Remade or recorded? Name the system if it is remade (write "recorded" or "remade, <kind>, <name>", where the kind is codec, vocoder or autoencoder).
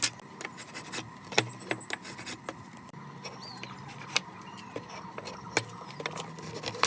recorded